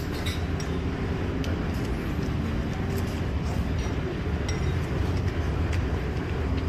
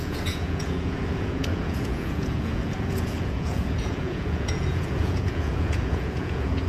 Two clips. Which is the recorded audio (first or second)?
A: first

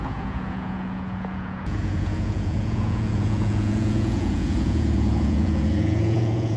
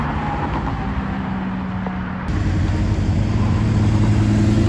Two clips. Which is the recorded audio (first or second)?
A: second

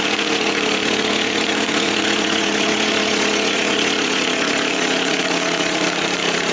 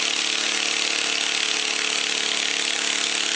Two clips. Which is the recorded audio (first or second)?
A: second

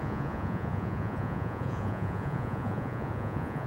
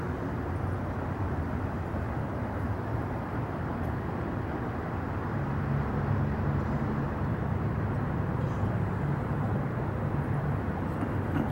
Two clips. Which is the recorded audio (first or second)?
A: second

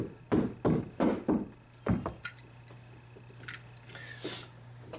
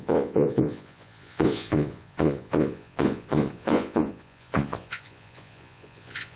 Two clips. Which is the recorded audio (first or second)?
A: first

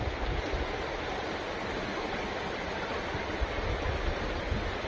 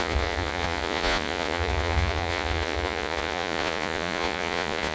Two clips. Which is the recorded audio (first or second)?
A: first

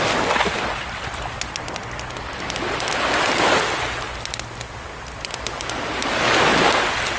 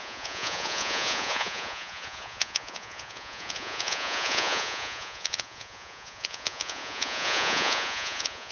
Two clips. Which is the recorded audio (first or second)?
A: first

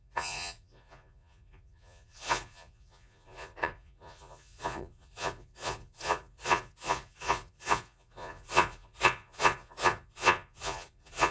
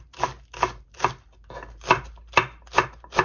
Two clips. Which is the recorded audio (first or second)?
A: second